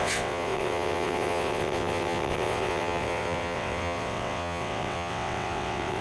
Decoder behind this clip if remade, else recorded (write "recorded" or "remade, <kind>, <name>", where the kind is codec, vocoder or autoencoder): remade, vocoder, WaveNeXt